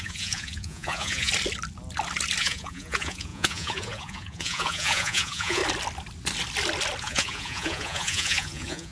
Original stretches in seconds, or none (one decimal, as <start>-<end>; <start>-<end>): 1.3-2.4; 5.6-7.0